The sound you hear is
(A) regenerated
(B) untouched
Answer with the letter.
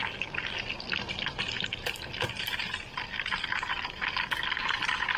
B